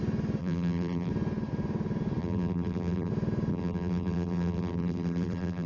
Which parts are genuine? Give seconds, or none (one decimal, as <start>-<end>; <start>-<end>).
0.0-0.4; 1.1-2.2; 3.1-3.5